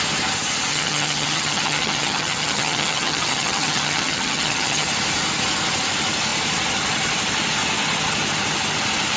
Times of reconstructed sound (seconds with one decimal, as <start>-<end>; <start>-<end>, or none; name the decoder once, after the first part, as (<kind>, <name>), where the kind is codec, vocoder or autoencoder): 0.7-4.9 (vocoder, HiFi-GAN)